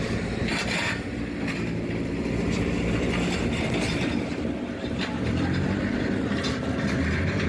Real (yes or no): no